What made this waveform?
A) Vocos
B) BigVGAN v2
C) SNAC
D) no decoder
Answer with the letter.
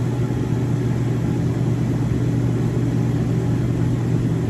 D